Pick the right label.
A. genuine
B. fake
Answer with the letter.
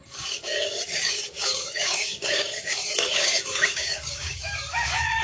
B